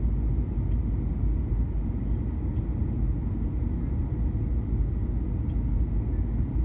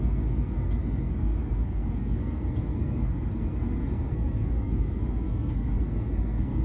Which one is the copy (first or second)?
second